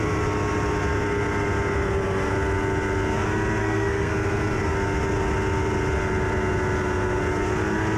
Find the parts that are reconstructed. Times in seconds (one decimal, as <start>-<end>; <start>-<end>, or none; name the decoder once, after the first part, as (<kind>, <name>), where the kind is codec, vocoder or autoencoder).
3.6-4.1 (codec, SNAC)